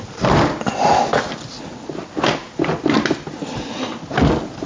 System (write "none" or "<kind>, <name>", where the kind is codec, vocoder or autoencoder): none